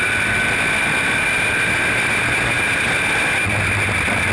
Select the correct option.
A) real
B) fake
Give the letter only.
A